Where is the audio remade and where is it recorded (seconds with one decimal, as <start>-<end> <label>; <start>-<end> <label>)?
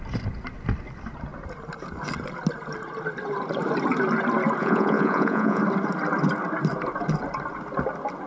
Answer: 0.0-4.6 recorded; 4.6-5.6 remade; 5.6-8.3 recorded